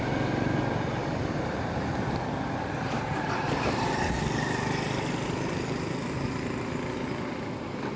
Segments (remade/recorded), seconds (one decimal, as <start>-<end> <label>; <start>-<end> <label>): 0.0-1.0 recorded; 1.0-3.3 remade; 3.3-8.0 recorded